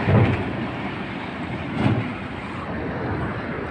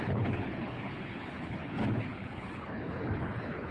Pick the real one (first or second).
first